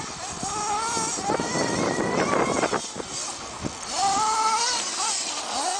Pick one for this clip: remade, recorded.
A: recorded